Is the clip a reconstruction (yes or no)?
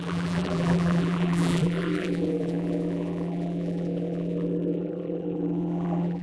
yes